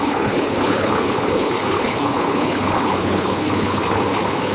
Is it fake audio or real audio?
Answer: fake